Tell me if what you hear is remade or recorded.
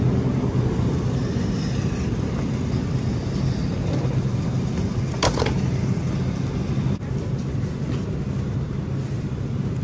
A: recorded